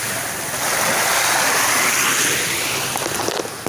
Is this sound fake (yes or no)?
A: no